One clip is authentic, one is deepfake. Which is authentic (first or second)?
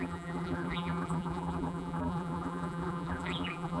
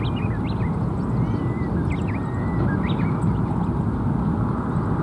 second